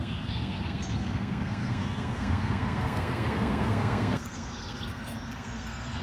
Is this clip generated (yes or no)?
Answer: yes